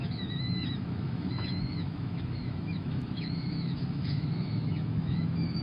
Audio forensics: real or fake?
fake